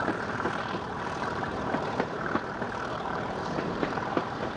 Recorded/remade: remade